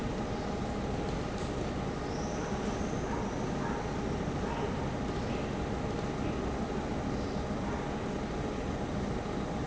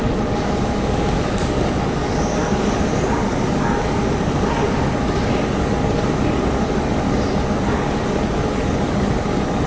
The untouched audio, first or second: first